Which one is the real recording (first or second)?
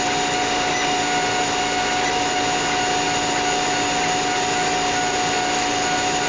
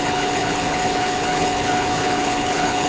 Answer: first